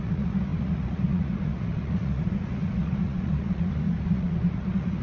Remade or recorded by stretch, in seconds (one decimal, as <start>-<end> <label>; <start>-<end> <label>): 0.0-5.0 remade